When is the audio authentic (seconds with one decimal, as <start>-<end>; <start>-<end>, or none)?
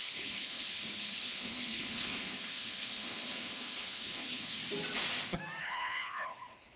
4.6-5.6